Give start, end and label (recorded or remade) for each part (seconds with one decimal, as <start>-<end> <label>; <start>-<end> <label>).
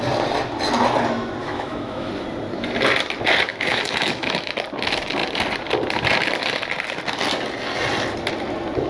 0.0-1.4 recorded; 1.4-2.1 remade; 2.1-3.5 recorded; 3.5-4.5 remade; 4.5-8.9 recorded